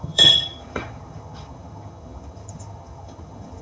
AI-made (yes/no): yes